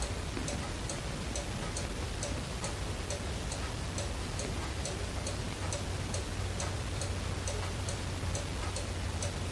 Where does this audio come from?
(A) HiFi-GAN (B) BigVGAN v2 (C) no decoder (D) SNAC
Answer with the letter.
C